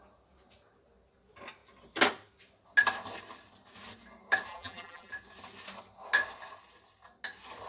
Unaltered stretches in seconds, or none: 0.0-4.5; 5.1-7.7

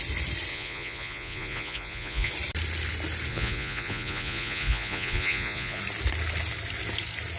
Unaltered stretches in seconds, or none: 0.0-0.5; 2.3-3.3; 5.8-7.4

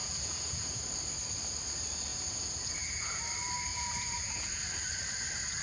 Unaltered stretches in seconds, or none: 0.8-2.1; 3.2-3.7; 4.3-5.6

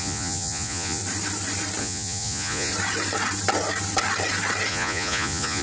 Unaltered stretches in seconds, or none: 1.0-1.8; 2.7-4.7

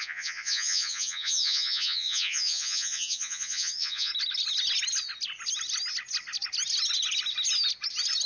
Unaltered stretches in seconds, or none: 4.1-8.3

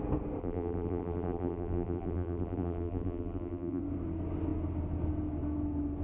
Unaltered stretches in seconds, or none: 0.0-0.4; 3.8-6.0